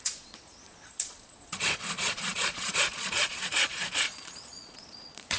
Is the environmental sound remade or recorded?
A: remade